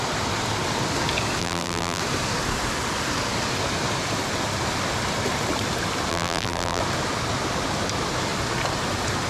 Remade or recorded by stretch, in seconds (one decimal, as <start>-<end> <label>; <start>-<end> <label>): 0.0-1.4 recorded; 1.4-2.0 remade; 2.0-6.1 recorded; 6.1-6.8 remade; 6.8-9.3 recorded